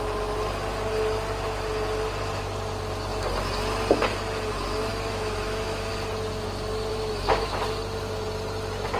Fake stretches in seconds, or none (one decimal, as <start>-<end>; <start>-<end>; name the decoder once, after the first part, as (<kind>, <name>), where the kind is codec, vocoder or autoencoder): 4.9-5.9 (autoencoder, DAC-VAE); 6.9-7.6